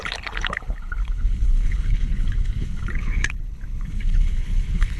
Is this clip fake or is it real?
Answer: fake